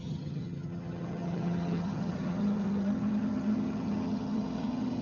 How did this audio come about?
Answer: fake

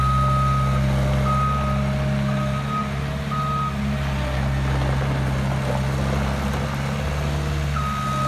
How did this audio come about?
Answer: real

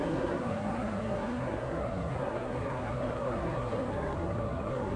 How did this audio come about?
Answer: fake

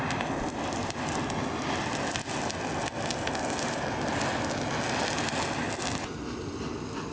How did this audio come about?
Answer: real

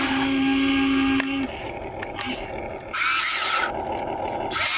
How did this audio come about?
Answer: real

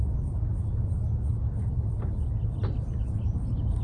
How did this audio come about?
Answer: real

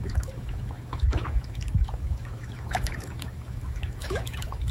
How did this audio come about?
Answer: fake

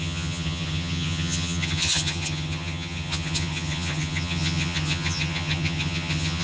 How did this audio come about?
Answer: fake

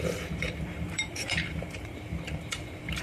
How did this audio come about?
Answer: fake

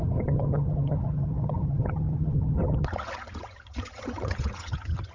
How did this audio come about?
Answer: fake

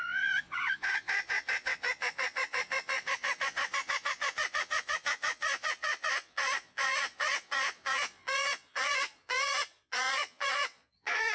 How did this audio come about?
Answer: fake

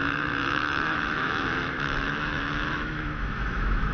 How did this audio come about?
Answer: fake